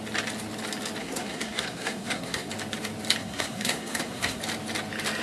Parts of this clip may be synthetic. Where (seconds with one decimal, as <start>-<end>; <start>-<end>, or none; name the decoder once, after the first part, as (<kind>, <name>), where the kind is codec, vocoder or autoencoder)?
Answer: 1.0-2.5 (codec, SNAC); 3.2-4.4